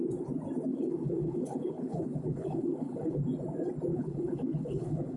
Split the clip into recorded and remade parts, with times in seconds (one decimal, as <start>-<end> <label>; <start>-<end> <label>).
0.0-0.7 recorded; 0.7-3.2 remade; 3.2-3.9 recorded; 3.9-5.2 remade